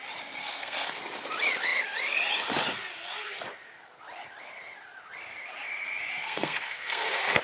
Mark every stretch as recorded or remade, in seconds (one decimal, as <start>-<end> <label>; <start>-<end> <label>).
0.0-0.4 recorded; 0.4-1.0 remade; 1.0-6.2 recorded; 6.2-7.4 remade